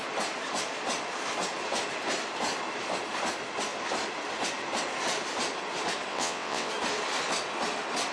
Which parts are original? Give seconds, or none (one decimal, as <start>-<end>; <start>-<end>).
0.0-6.1; 6.7-8.1